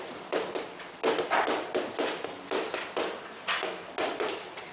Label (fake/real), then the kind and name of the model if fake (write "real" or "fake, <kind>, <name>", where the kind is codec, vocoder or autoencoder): real